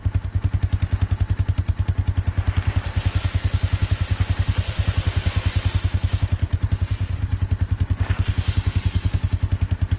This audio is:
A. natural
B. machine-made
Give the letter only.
A